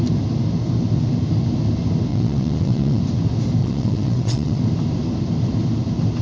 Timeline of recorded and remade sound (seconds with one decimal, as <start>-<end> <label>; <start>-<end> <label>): 0.0-2.1 recorded; 2.1-3.0 remade; 3.0-3.6 recorded; 3.6-4.6 remade; 4.6-6.2 recorded